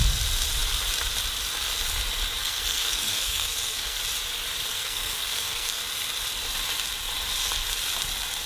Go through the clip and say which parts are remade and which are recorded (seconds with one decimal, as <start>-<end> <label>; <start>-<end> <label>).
0.0-2.4 recorded; 2.4-4.0 remade; 4.0-4.7 recorded; 4.7-5.8 remade; 5.8-8.5 recorded